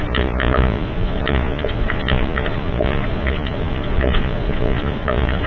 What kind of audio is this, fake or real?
fake